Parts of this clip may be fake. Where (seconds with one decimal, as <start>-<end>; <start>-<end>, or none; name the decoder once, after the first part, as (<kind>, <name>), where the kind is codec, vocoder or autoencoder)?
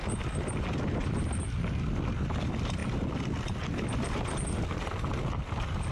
none